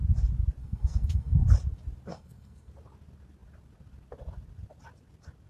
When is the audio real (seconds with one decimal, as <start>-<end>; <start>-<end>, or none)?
0.0-0.6; 1.4-2.1; 2.7-5.5